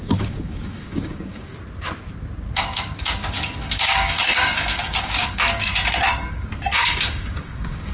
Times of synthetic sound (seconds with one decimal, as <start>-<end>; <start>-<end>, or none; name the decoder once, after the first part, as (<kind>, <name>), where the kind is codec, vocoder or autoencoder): 0.0-1.5 (codec, DAC); 2.6-5.7; 6.3-7.9